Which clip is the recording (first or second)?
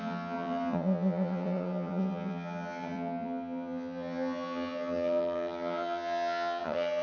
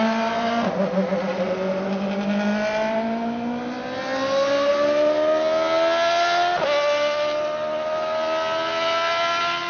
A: second